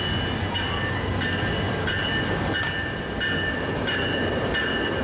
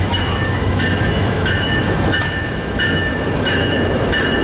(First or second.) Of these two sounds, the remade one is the second